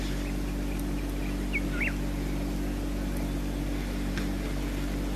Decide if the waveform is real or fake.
real